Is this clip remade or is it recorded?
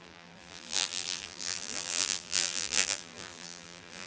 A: remade